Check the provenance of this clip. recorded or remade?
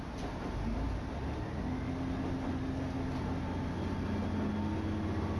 recorded